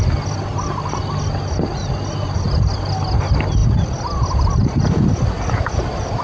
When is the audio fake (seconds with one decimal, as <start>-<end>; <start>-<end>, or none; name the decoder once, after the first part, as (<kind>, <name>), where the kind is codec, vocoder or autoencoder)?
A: none